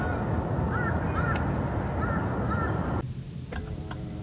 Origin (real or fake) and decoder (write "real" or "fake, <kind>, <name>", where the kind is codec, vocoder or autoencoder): real